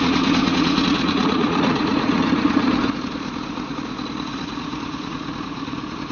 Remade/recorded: remade